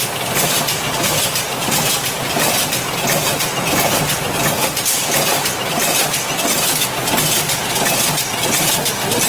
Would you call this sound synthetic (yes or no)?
no